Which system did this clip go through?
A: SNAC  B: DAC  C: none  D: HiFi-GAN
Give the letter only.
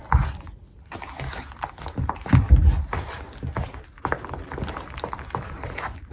C